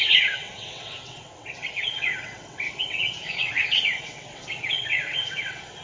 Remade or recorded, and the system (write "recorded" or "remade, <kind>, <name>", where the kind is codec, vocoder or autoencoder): remade, vocoder, WaveNeXt